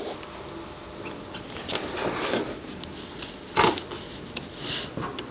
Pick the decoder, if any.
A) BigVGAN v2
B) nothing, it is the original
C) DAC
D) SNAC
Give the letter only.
B